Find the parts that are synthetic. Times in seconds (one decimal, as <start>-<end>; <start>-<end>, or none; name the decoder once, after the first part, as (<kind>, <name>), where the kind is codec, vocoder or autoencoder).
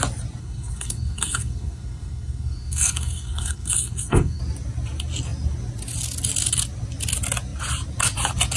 0.4-4.4 (codec, SNAC)